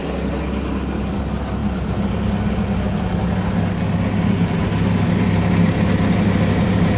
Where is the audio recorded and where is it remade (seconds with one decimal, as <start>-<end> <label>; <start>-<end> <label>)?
0.0-7.0 recorded